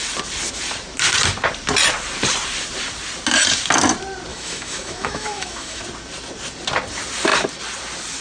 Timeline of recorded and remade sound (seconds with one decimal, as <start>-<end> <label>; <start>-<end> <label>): 0.0-4.3 recorded; 4.3-5.8 remade; 5.8-8.2 recorded